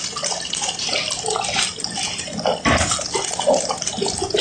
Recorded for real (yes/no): yes